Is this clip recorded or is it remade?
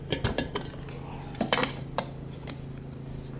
recorded